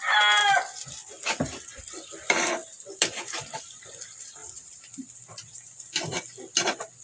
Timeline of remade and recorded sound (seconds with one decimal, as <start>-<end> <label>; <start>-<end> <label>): 0.0-0.4 remade; 0.4-1.8 recorded; 1.8-4.4 remade; 4.4-7.0 recorded